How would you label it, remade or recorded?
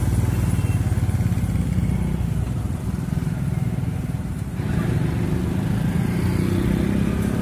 recorded